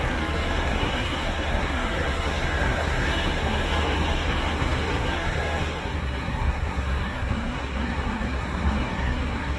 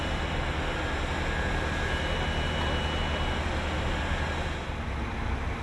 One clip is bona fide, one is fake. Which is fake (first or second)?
first